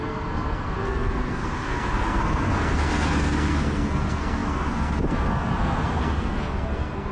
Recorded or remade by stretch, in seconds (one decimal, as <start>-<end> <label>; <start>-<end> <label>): 0.0-7.1 remade